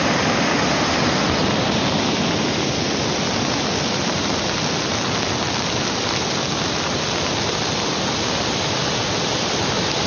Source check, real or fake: real